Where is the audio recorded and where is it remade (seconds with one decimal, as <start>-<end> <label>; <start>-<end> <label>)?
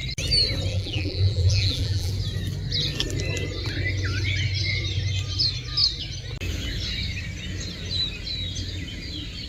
0.0-0.7 recorded; 0.7-2.1 remade; 2.1-9.5 recorded